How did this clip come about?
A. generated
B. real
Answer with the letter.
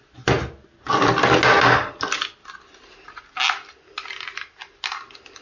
B